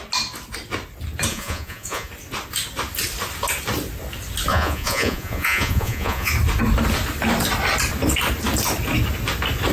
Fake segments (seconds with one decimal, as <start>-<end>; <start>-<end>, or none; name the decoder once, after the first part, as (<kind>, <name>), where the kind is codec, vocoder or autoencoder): 1.3-2.1 (vocoder, Vocos); 4.5-6.3